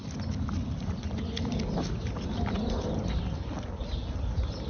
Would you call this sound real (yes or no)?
yes